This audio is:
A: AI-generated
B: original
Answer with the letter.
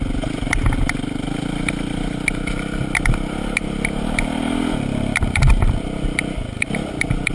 B